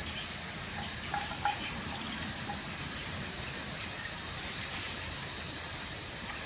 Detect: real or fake fake